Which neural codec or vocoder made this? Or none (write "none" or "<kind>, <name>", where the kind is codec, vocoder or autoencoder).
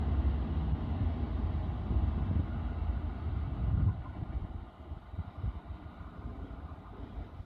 none